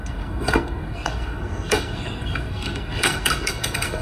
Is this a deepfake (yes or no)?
yes